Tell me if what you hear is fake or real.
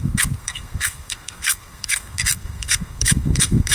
fake